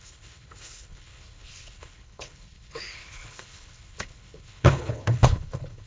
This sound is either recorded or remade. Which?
remade